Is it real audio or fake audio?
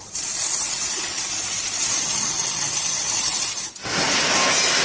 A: real